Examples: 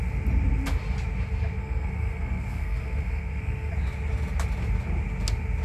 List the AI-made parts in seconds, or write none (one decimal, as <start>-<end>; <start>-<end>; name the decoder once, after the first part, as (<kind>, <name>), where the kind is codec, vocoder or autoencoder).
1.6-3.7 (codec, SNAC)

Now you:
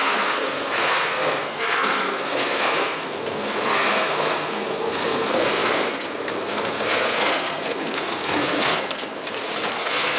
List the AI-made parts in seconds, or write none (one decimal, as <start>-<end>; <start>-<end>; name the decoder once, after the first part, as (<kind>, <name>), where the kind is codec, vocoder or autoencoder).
0.0-9.1 (codec, SNAC); 9.7-10.2

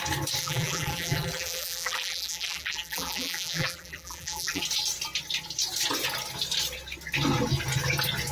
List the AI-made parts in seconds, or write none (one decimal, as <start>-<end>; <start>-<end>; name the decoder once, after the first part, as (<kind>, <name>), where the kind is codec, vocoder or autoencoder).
0.4-4.6 (vocoder, BigVGAN v2)

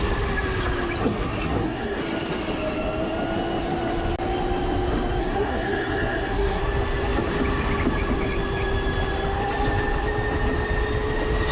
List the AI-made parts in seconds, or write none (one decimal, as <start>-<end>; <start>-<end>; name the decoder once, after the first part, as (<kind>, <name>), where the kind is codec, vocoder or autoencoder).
1.0-2.0 (codec, SNAC); 5.2-6.6

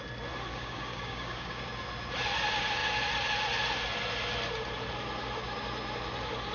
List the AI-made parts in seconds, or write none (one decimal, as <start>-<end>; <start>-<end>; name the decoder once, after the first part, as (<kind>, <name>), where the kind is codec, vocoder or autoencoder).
0.5-1.6 (codec, DAC)

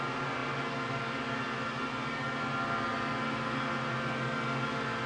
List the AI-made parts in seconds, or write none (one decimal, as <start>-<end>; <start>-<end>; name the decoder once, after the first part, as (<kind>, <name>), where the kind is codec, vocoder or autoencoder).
none

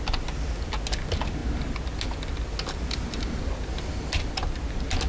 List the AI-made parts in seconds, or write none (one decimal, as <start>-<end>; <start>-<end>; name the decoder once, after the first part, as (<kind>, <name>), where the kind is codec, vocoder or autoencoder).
none

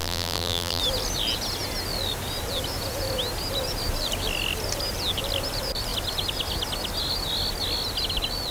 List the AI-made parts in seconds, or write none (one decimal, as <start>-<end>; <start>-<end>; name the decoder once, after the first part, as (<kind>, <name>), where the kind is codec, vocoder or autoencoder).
0.0-0.8 (vocoder, BigVGAN v2)